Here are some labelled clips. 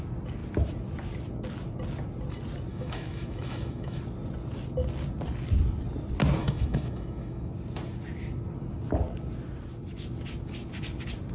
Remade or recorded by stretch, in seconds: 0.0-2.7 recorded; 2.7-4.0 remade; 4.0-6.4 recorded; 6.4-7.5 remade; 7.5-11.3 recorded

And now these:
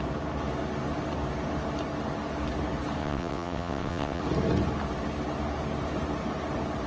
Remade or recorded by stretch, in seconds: 0.0-3.0 recorded; 3.0-4.2 remade; 4.2-6.9 recorded

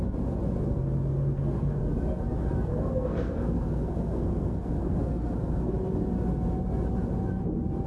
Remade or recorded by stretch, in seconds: 0.0-1.1 recorded; 1.1-1.8 remade; 1.8-2.7 recorded; 2.7-5.7 remade; 5.7-7.9 recorded

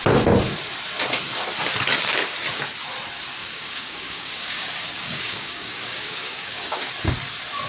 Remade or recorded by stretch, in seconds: 0.0-3.4 recorded; 3.4-6.9 remade; 6.9-7.7 recorded